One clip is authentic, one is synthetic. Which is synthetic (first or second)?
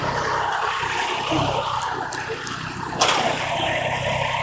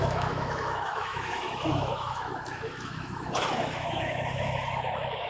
second